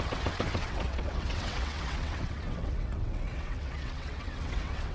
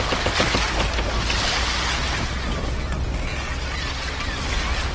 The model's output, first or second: first